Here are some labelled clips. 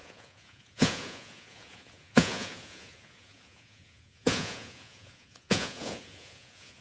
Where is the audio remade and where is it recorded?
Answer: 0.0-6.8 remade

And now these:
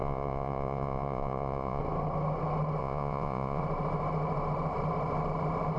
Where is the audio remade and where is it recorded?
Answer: 0.0-1.8 remade; 1.8-2.8 recorded; 2.8-3.6 remade; 3.6-5.8 recorded

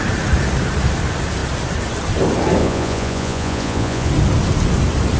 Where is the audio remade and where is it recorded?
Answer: 0.0-2.6 recorded; 2.6-4.1 remade; 4.1-5.2 recorded

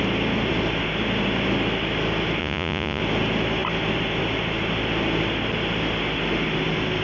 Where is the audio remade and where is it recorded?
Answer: 0.0-2.4 recorded; 2.4-3.0 remade; 3.0-7.0 recorded